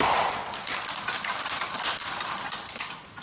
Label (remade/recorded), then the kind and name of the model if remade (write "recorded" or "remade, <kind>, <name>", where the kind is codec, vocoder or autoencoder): recorded